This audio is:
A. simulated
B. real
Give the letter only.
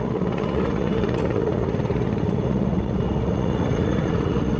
A